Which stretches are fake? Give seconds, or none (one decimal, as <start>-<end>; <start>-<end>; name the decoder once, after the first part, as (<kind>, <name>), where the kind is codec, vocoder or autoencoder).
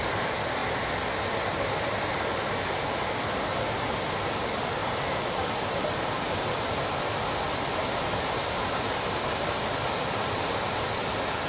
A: none